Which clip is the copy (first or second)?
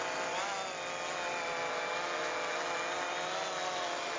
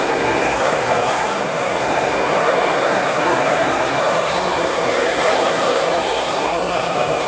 second